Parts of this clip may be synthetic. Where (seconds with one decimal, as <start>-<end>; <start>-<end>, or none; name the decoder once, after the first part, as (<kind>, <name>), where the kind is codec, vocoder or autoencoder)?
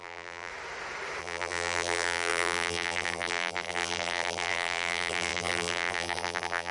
0.0-0.5 (vocoder, BigVGAN v2); 1.2-6.7